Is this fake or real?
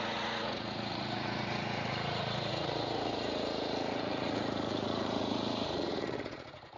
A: fake